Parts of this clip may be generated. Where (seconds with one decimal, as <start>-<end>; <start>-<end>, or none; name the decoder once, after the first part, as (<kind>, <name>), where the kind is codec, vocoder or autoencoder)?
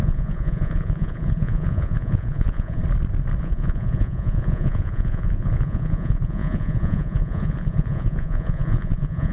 0.0-2.8 (vocoder, Vocos); 3.4-9.3